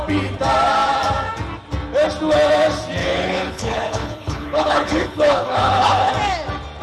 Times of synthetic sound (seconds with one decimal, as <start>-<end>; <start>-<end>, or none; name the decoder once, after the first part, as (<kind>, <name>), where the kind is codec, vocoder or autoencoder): 3.0-6.1 (codec, HILCodec)